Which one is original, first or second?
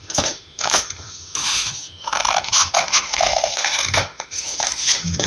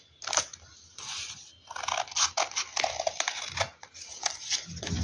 second